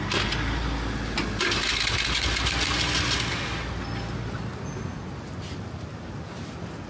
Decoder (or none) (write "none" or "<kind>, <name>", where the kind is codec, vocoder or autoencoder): none